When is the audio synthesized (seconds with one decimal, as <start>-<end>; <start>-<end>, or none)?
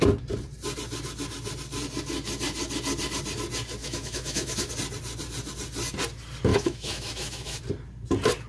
3.8-4.7; 6.5-7.6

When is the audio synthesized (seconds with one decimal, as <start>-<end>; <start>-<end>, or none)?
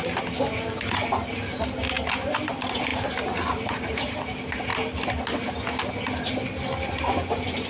none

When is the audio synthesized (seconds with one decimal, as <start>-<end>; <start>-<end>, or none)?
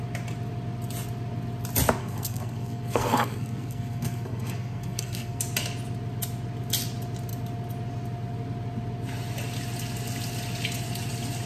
2.0-5.4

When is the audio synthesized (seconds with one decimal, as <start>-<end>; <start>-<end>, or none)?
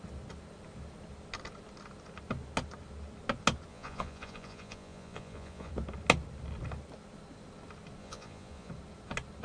3.7-5.7; 8.0-8.7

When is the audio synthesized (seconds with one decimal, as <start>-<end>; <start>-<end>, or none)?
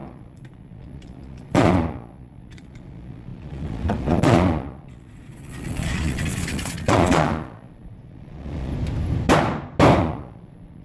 0.0-8.7; 10.0-10.8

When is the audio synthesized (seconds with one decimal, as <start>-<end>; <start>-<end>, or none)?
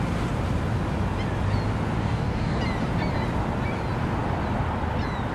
2.0-2.6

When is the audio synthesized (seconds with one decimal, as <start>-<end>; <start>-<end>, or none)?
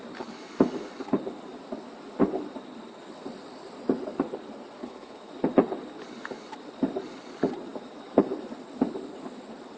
4.8-5.3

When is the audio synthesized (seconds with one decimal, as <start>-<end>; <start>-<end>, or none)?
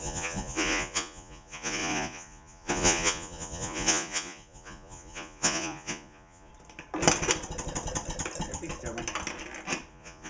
0.0-6.5; 9.9-10.3